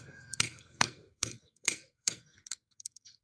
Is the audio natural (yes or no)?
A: no